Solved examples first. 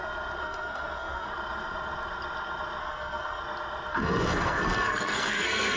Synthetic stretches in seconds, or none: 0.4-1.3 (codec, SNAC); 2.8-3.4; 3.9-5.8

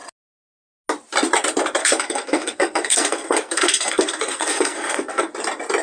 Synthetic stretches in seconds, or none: 1.8-5.3 (codec, SNAC)

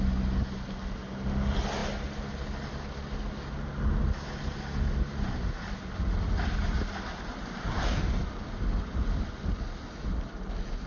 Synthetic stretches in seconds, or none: none

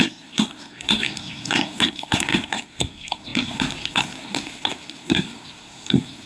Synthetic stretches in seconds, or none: 0.0-6.3 (codec, SNAC)